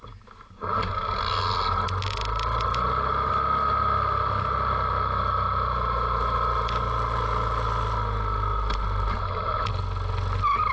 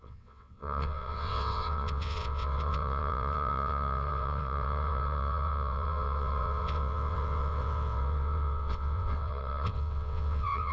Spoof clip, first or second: second